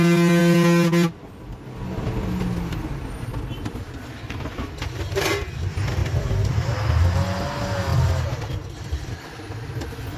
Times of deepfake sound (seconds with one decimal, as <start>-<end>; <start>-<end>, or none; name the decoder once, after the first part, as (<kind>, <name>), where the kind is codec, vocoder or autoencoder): 6.0-6.7 (vocoder, BigVGAN v2); 7.9-9.4